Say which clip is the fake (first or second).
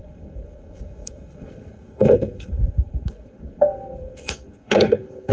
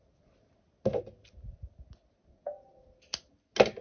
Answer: first